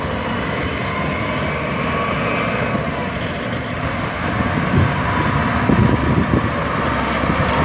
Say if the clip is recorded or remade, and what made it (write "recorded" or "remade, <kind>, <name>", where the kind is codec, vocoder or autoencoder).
recorded